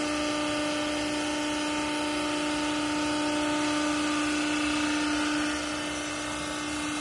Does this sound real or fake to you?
real